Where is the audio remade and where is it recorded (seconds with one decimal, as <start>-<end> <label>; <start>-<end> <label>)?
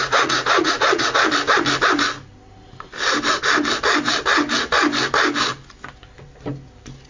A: 0.0-1.3 remade; 1.3-7.1 recorded